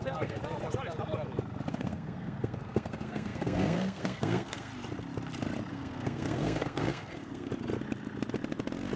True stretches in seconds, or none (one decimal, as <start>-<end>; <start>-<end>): 0.4-1.7; 4.7-5.7; 7.5-9.0